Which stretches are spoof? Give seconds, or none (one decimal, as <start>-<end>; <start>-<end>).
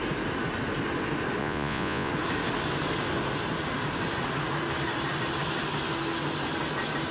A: 1.4-2.1